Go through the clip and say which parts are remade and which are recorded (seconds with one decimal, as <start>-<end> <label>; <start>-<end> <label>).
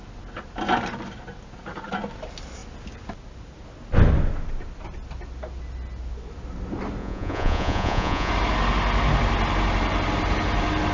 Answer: 0.0-7.0 recorded; 7.0-8.3 remade; 8.3-10.9 recorded